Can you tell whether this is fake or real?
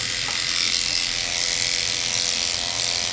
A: real